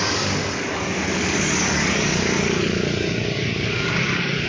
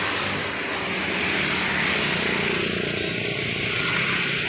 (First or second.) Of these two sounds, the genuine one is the second